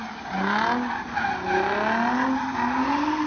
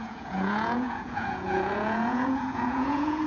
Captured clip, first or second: first